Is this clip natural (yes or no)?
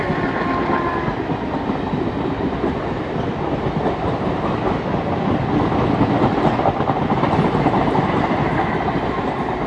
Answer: yes